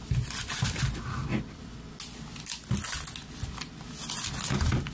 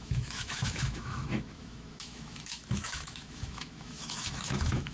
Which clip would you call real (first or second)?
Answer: first